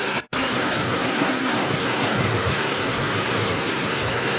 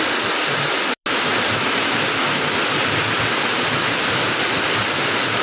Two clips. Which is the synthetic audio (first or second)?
first